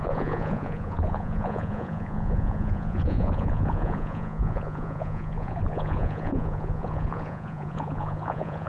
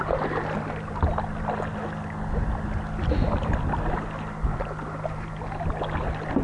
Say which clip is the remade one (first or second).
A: first